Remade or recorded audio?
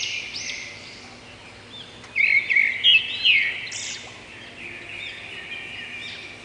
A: recorded